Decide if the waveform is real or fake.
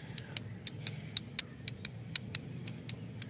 fake